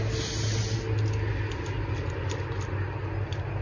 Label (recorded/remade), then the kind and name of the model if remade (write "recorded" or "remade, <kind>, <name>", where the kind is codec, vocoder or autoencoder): recorded